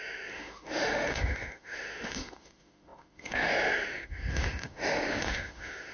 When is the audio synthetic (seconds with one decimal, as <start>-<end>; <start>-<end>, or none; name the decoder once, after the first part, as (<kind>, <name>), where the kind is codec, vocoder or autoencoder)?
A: 0.0-5.9 (autoencoder, DAC-VAE)